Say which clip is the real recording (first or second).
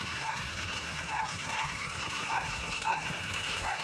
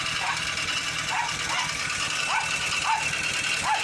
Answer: second